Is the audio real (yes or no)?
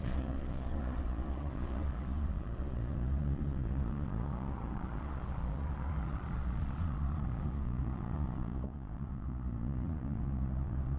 no